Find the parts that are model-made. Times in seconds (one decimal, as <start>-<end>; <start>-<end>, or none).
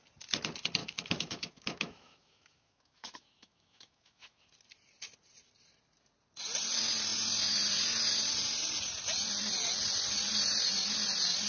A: 0.8-4.4